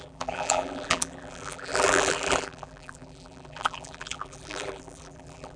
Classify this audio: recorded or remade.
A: remade